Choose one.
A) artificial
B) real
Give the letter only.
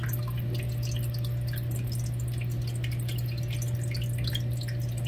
B